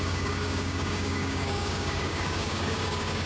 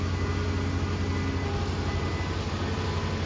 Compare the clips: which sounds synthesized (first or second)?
first